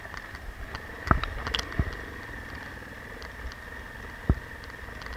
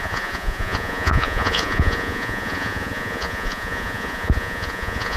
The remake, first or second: second